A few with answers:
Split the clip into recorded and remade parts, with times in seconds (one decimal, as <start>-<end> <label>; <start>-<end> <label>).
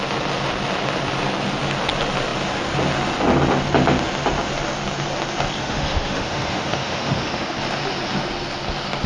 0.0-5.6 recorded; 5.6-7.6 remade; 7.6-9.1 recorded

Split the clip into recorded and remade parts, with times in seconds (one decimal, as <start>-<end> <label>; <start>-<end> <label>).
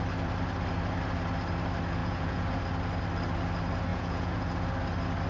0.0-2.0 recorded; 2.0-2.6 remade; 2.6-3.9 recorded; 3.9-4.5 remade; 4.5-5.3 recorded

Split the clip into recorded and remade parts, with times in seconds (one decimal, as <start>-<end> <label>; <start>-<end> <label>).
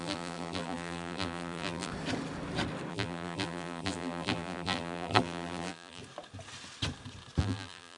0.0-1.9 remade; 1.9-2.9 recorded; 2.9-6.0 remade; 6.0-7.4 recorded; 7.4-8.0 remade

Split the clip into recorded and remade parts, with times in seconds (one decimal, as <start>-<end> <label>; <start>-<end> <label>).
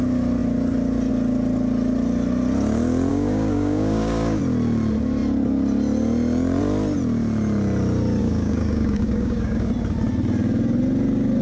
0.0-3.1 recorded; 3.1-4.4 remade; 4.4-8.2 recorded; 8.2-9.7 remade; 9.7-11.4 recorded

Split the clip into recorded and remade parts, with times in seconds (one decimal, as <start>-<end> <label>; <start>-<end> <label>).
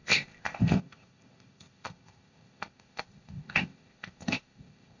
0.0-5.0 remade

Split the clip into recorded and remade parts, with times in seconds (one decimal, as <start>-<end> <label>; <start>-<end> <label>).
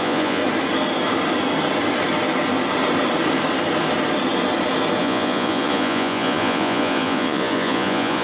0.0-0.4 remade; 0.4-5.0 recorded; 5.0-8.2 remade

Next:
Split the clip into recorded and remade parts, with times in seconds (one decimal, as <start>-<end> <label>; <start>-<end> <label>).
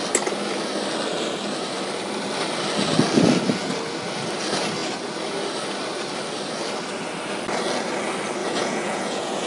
0.0-8.4 recorded; 8.4-9.5 remade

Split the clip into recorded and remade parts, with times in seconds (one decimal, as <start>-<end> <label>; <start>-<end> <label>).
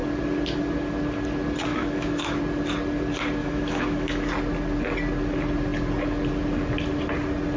0.0-1.7 recorded; 1.7-2.4 remade; 2.4-3.4 recorded; 3.4-4.3 remade; 4.3-7.6 recorded